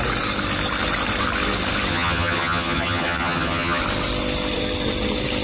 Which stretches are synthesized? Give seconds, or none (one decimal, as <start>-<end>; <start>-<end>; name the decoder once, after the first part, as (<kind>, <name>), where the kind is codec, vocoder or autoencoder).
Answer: 1.9-3.8 (vocoder, HiFi-GAN)